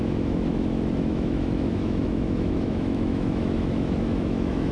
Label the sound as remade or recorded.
remade